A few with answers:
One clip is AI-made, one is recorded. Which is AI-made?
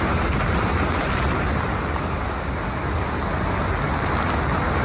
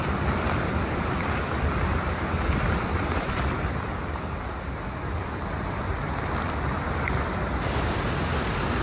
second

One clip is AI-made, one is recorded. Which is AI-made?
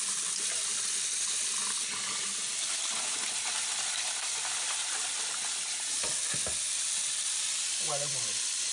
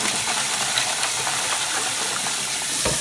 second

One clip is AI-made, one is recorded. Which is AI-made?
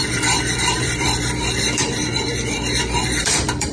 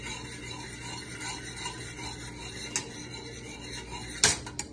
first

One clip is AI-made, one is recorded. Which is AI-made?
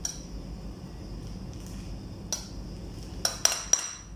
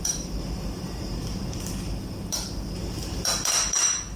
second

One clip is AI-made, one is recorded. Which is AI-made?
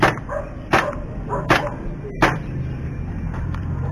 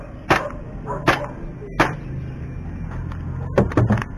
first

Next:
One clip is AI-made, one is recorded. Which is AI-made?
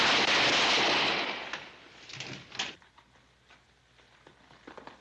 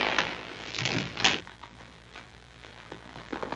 second